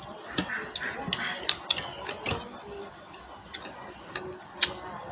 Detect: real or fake real